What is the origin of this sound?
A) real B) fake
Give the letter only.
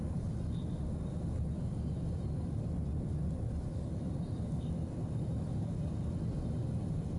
A